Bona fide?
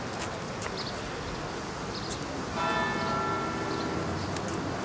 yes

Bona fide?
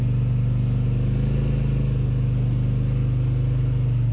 yes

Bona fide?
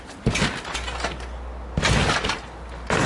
yes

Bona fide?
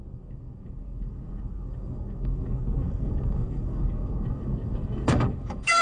no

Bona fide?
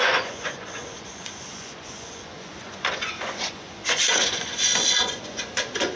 no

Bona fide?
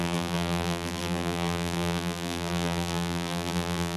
no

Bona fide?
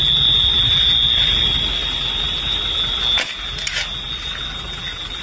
yes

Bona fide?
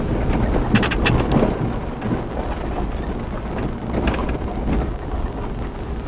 yes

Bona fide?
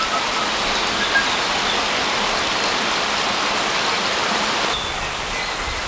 yes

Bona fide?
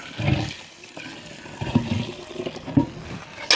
yes